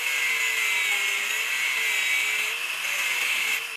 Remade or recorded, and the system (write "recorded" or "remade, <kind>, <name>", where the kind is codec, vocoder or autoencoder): recorded